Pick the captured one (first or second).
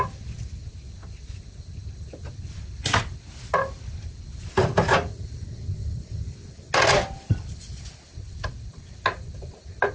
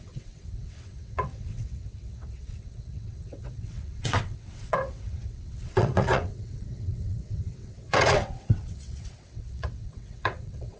first